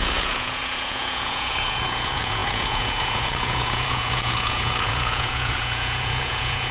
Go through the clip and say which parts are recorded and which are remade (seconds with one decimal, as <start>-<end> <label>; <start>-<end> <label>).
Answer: 0.0-6.7 remade

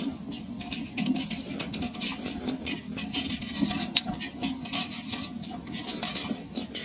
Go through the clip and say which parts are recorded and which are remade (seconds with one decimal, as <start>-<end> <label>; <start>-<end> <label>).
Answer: 0.0-6.8 recorded

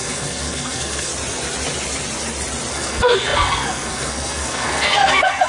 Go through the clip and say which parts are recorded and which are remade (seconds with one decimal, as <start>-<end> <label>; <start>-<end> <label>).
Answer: 0.0-1.1 remade; 1.1-2.7 recorded; 2.7-5.5 remade

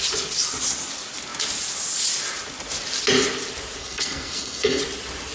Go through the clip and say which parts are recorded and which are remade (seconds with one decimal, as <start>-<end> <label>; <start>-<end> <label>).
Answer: 0.0-3.8 recorded; 3.8-4.8 remade; 4.8-5.3 recorded

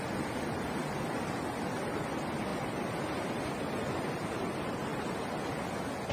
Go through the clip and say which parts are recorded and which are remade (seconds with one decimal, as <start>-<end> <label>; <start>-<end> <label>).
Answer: 0.0-6.1 recorded